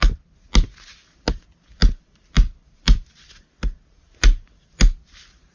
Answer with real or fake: real